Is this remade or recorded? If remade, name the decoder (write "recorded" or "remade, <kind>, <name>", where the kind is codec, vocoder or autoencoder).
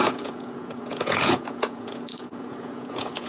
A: remade, vocoder, Vocos